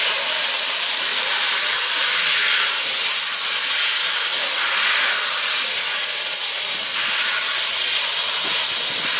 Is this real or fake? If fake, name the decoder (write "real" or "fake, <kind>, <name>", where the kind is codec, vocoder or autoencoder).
real